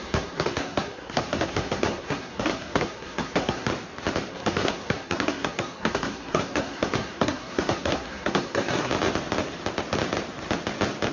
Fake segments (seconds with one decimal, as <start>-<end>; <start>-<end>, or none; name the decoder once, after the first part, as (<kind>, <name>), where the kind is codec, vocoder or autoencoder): 0.0-3.7 (codec, SNAC); 4.3-8.9